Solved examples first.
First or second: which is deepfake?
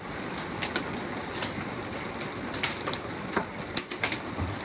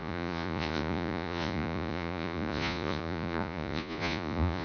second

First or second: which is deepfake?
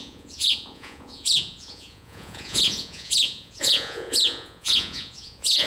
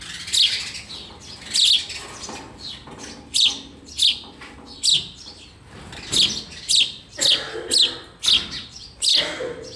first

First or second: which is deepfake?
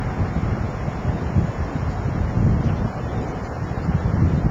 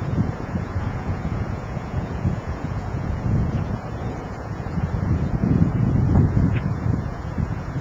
second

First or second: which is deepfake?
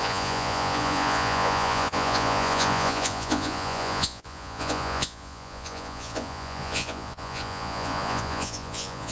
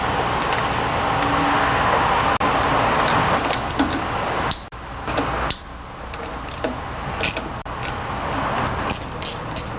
first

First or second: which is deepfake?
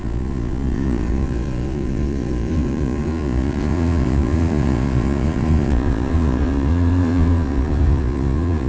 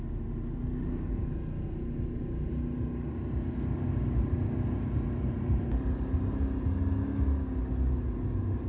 first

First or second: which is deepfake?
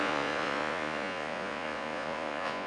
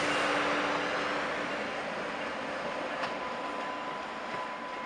first